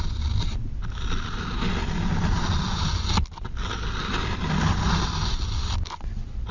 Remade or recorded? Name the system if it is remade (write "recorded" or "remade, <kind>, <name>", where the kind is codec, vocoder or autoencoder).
recorded